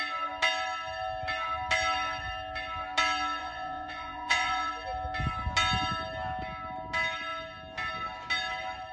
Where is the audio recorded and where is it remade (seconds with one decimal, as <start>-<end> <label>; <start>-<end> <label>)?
0.0-3.4 recorded; 3.4-4.7 remade; 4.7-8.9 recorded